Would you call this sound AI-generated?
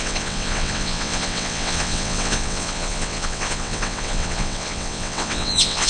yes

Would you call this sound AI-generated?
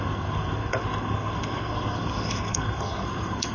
yes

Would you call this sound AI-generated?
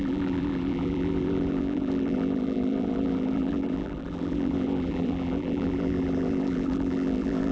yes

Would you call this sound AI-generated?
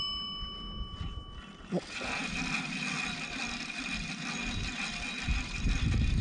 no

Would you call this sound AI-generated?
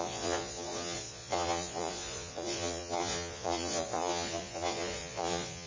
yes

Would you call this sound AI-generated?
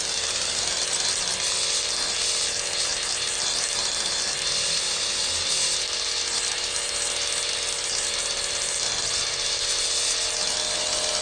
no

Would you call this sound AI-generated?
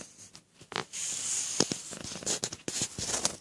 no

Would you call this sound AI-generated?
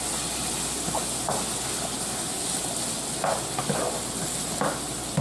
no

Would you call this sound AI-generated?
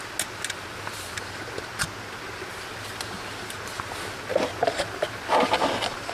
no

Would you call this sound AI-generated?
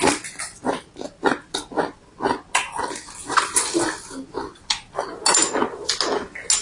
no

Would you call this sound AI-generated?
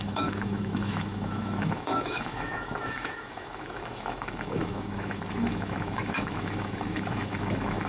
yes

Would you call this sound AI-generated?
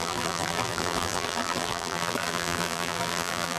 yes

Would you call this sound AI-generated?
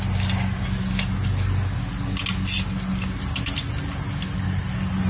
no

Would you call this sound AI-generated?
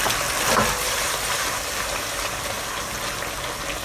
no